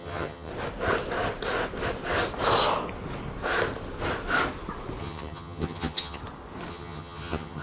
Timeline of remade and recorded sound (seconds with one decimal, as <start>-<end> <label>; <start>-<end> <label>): 0.0-0.5 remade; 0.5-5.0 recorded; 5.0-6.2 remade; 6.2-6.7 recorded; 6.7-7.6 remade